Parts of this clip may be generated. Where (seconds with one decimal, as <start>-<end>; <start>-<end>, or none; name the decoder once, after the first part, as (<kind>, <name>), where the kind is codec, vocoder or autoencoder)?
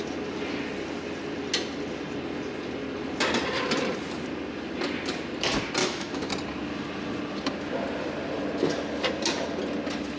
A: 5.8-6.3 (autoencoder, DAC-VAE)